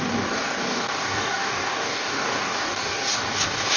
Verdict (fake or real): fake